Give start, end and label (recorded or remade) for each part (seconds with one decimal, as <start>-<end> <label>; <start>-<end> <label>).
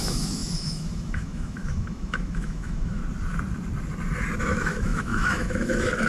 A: 0.0-3.0 remade; 3.0-4.4 recorded; 4.4-6.1 remade